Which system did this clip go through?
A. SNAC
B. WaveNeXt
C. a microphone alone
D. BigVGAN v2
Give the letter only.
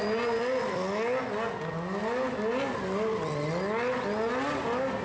C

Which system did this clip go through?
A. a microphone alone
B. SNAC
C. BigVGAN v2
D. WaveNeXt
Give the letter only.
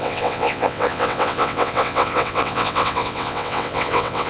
D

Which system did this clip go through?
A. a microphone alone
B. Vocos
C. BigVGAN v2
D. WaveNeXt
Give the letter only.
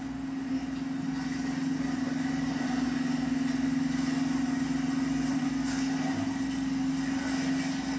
A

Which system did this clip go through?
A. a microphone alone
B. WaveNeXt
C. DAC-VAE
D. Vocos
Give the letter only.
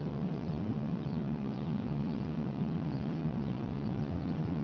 B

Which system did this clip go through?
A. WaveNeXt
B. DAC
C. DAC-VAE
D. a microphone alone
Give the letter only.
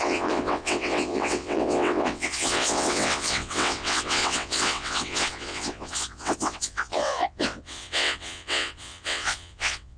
A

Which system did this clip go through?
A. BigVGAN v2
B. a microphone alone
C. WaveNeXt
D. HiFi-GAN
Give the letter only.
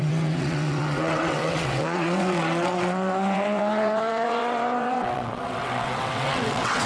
C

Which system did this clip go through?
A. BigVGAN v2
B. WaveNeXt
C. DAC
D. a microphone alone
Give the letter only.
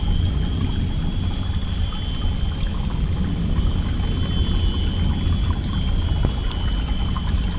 D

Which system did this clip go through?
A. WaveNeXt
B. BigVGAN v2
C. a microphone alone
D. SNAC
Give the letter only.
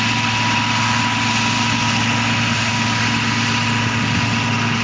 C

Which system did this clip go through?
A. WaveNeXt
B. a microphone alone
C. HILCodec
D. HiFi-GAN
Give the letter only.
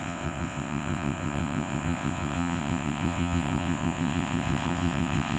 A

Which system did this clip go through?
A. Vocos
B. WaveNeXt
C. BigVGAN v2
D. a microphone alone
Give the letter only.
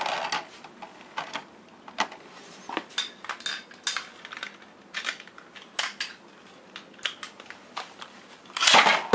D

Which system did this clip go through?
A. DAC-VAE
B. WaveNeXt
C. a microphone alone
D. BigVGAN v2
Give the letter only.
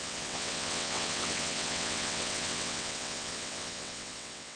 B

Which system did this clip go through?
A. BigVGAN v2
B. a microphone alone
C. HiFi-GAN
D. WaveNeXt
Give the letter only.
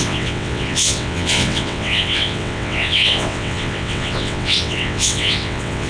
D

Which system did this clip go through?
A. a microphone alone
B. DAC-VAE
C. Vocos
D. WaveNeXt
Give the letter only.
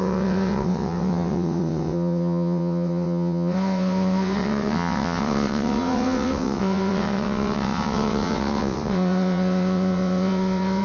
D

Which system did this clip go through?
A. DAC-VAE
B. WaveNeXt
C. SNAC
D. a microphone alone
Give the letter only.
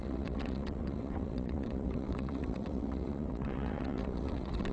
B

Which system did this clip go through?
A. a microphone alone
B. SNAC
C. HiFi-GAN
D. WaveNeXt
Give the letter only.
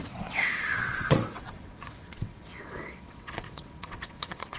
D